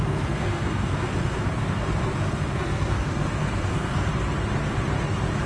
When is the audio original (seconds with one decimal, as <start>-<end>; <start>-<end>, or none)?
4.1-5.5